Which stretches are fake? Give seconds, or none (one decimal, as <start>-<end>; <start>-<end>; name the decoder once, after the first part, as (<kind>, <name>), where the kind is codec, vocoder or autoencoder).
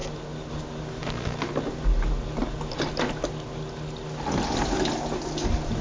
none